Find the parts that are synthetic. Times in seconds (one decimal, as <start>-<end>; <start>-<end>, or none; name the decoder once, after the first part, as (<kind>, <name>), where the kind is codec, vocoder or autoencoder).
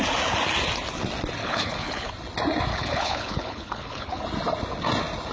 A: 1.4-2.1 (codec, HILCodec); 2.7-4.2